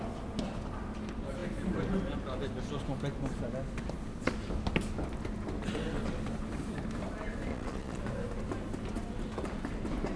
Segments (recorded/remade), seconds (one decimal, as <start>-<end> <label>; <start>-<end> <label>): 0.0-7.5 recorded; 7.5-8.0 remade; 8.0-10.2 recorded